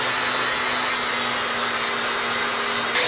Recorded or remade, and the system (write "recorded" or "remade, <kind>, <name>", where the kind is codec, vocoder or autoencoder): recorded